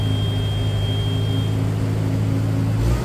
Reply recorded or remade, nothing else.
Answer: recorded